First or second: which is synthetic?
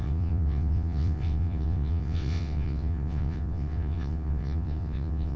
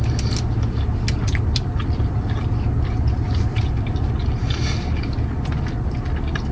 first